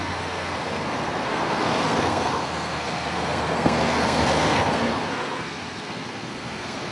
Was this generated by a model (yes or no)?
yes